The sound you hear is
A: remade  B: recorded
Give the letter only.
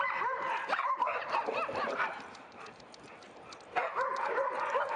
B